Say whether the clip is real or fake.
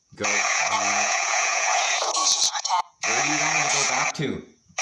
fake